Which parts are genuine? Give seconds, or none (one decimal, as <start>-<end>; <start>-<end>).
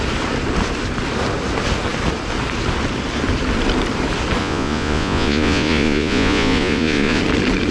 0.0-4.4; 7.2-7.7